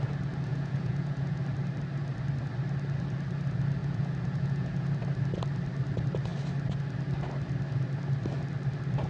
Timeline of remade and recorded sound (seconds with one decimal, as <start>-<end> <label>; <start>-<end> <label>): 0.0-0.5 recorded; 0.5-1.4 remade; 1.4-3.8 recorded; 3.8-4.9 remade; 4.9-9.1 recorded